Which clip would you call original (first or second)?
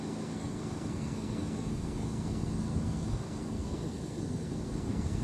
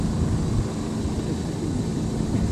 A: second